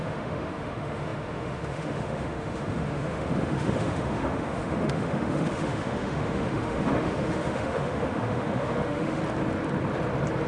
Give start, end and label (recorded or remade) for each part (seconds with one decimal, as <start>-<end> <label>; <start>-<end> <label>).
0.0-9.2 remade; 9.2-10.5 recorded